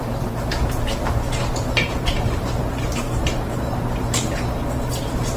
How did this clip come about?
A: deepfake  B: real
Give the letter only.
A